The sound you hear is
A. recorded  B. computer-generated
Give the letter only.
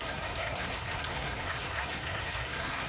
B